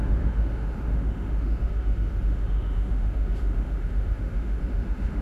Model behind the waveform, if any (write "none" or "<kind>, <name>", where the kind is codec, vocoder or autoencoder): autoencoder, DAC-VAE